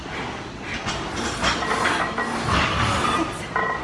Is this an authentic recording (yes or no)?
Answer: yes